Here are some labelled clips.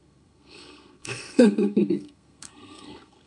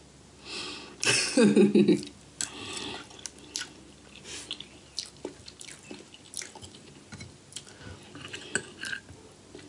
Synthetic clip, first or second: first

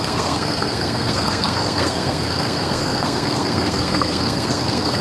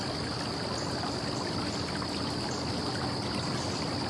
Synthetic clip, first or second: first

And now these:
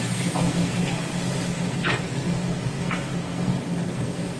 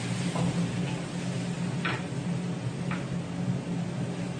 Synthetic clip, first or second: first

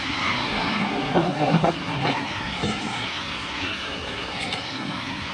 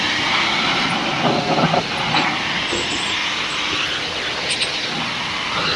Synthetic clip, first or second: first